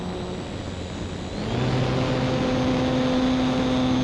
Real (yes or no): yes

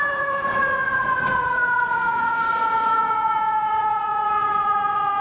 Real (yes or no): no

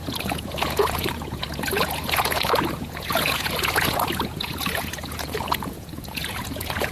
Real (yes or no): no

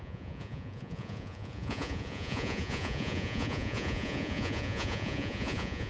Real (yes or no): no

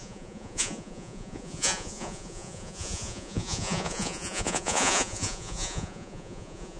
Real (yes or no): no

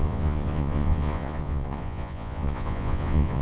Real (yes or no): no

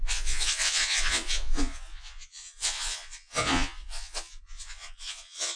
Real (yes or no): no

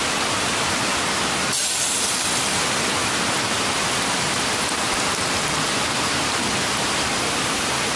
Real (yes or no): yes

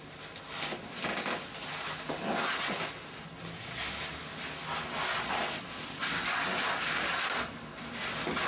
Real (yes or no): yes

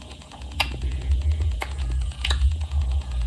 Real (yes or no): no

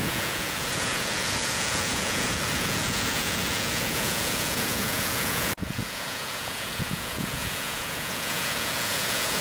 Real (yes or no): no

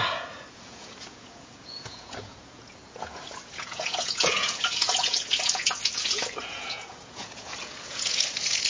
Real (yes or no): no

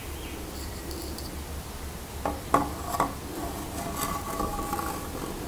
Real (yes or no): yes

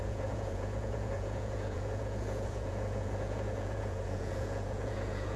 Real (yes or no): no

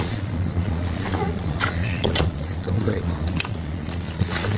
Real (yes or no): no